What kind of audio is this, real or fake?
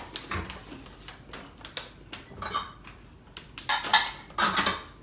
real